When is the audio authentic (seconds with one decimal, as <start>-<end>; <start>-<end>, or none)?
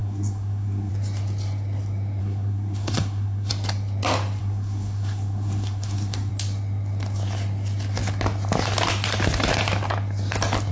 0.9-2.2; 3.5-4.4; 6.3-10.7